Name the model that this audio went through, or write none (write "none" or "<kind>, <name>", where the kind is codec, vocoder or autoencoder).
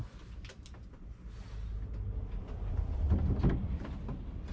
none